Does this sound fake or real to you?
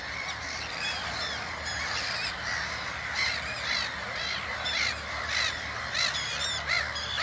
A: fake